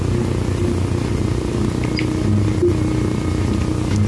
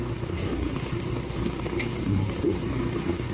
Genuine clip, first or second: first